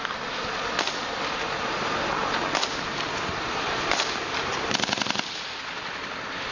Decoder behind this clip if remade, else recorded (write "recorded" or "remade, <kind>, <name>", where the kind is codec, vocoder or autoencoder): recorded